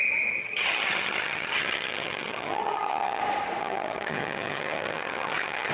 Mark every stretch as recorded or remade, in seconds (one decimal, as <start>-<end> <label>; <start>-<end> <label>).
0.0-0.4 recorded; 0.4-3.2 remade; 3.2-3.6 recorded; 3.6-5.7 remade